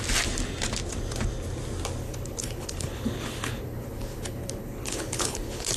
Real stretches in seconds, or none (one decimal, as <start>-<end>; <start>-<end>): 0.0-2.0